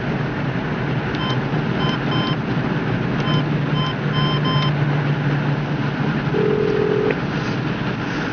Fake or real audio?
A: real